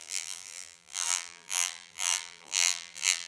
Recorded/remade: remade